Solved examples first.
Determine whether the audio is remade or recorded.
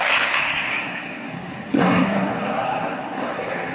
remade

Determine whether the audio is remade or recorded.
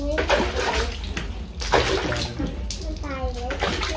recorded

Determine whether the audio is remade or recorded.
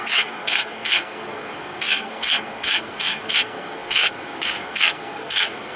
remade